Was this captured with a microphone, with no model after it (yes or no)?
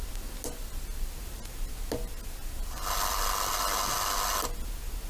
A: yes